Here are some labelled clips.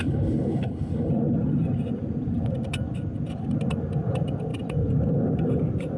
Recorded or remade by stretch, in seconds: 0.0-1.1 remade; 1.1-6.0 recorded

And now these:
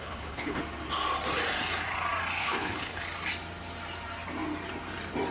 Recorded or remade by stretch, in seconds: 0.0-0.6 remade; 0.6-2.4 recorded; 2.4-3.0 remade; 3.0-5.3 recorded

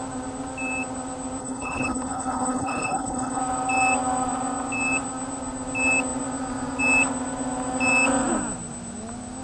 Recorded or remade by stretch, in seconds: 0.0-1.4 recorded; 1.4-3.4 remade; 3.4-9.4 recorded

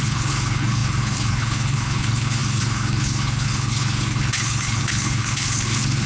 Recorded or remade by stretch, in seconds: 0.0-6.1 remade

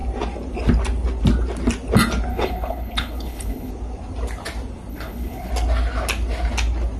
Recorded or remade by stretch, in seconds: 0.0-2.3 recorded; 2.3-3.7 remade; 3.7-4.9 recorded; 4.9-5.5 remade; 5.5-7.0 recorded